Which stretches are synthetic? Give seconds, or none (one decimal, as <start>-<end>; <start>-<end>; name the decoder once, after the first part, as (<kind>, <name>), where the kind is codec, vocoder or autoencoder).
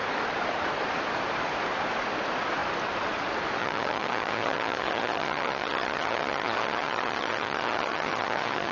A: 3.6-8.7 (vocoder, HiFi-GAN)